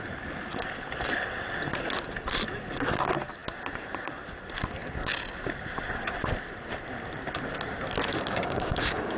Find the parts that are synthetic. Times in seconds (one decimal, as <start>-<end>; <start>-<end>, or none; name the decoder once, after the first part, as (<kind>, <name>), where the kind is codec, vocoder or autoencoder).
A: 8.1-9.2 (codec, DAC)